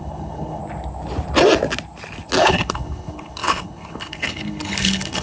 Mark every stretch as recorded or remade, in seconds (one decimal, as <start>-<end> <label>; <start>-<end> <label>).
0.0-0.6 remade; 0.6-2.4 recorded; 2.4-5.2 remade